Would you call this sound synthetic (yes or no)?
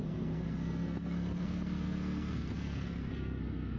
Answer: yes